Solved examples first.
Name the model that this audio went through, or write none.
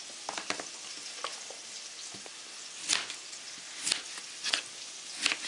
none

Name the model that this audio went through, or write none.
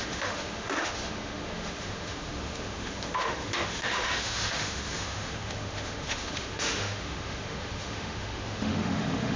autoencoder, DAC-VAE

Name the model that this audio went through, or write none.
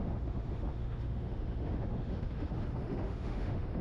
autoencoder, DAC-VAE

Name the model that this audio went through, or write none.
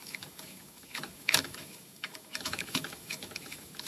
autoencoder, DAC-VAE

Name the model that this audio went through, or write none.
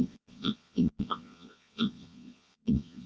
vocoder, Vocos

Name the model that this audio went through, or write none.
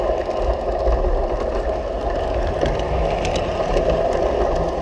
none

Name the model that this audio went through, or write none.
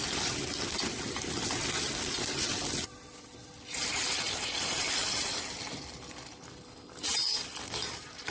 none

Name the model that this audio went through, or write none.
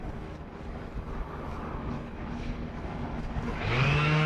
codec, DAC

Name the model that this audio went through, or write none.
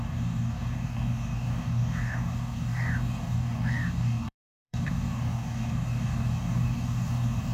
codec, DAC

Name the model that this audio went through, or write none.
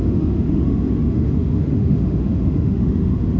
autoencoder, DAC-VAE